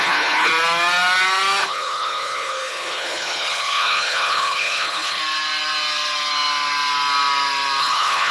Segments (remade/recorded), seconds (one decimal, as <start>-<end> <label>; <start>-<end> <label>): 0.0-0.5 remade; 0.5-1.6 recorded; 1.6-5.2 remade; 5.2-7.8 recorded; 7.8-8.3 remade